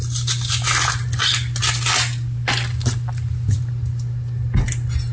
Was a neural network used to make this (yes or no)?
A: no